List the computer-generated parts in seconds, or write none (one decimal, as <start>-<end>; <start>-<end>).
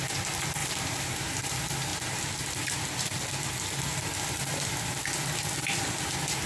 0.6-1.3